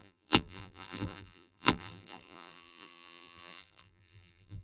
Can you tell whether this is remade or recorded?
remade